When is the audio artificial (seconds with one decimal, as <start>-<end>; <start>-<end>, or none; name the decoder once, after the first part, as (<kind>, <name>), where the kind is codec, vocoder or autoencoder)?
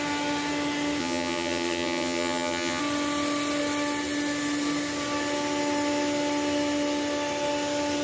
1.0-2.8 (vocoder, HiFi-GAN)